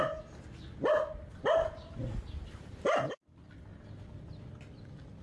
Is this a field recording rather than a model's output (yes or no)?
yes